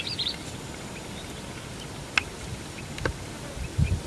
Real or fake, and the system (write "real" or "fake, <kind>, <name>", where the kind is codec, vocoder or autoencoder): real